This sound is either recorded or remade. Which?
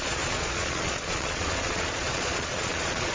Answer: remade